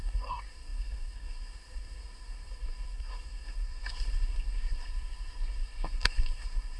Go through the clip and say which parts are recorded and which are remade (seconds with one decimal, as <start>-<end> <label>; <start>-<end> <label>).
0.0-6.8 remade